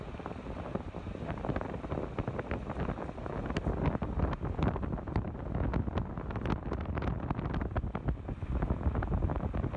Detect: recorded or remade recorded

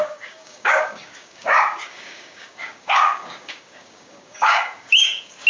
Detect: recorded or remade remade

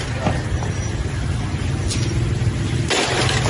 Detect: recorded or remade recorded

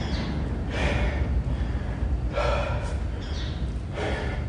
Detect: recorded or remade recorded